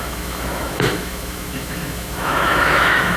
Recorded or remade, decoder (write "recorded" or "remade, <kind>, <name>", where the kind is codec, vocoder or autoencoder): remade, autoencoder, DAC-VAE